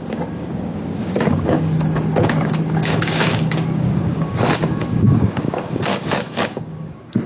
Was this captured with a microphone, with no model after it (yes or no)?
no